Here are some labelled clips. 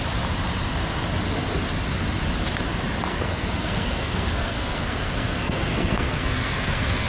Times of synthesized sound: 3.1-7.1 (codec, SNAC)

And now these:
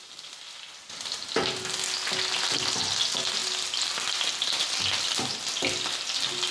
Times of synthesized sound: none

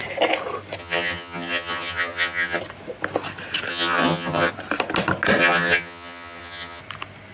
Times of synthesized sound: 0.8-2.6 (vocoder, HiFi-GAN); 3.7-4.5; 5.4-6.8

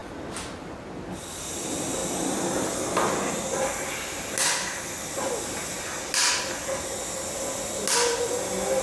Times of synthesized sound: none

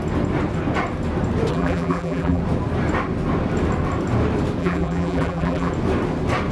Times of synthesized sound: 1.5-2.4 (vocoder, BigVGAN v2); 4.6-5.7

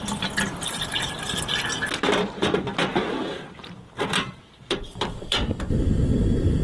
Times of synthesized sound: 2.9-6.6 (vocoder, BigVGAN v2)

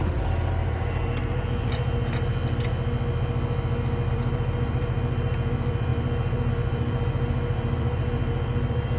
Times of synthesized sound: 0.0-2.4 (vocoder, BigVGAN v2); 4.1-9.0